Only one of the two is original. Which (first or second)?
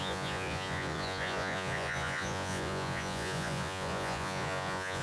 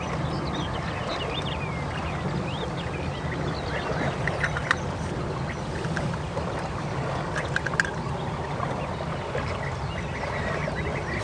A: second